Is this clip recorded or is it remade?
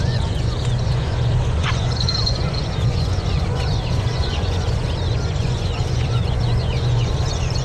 remade